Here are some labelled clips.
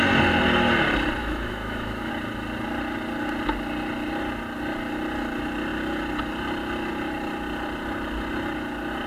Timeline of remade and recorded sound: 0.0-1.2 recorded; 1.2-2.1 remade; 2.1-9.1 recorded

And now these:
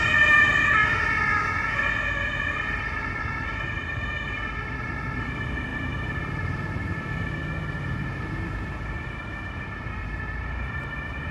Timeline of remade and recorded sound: 0.0-0.8 remade; 0.8-2.4 recorded; 2.4-11.3 remade

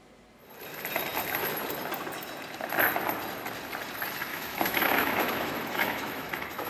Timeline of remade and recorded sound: 0.0-4.3 recorded; 4.3-6.7 remade

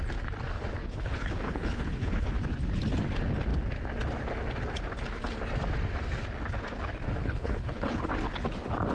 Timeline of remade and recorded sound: 0.0-0.8 recorded; 0.8-2.4 remade; 2.4-7.2 recorded; 7.2-8.0 remade; 8.0-8.9 recorded

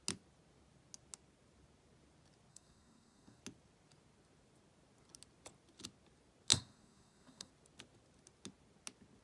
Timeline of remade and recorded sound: 0.0-2.5 recorded; 2.5-3.4 remade; 3.4-6.5 recorded; 6.5-7.5 remade; 7.5-9.2 recorded

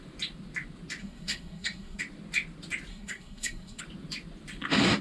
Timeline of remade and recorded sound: 0.0-1.0 recorded; 1.0-2.0 remade; 2.0-2.9 recorded; 2.9-3.8 remade; 3.8-5.0 recorded